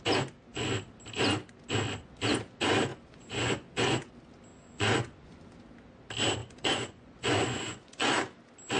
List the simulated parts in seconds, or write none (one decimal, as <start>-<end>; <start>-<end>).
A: 2.9-4.1; 4.5-5.4; 6.4-8.1